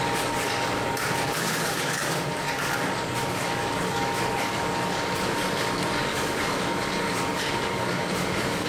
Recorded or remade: remade